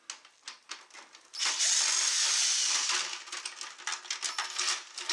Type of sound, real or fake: real